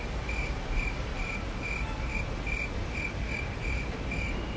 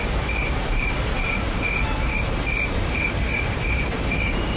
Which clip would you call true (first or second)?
first